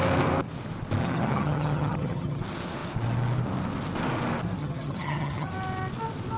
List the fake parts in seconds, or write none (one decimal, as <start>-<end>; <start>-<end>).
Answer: 1.0-2.4; 4.6-5.5